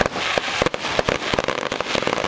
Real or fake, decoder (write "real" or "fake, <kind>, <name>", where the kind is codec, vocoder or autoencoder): real